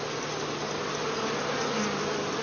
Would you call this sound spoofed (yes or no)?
no